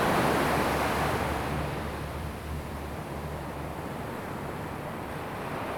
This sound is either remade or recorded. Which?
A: remade